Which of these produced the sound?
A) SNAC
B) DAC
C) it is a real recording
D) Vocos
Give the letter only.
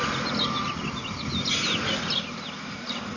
C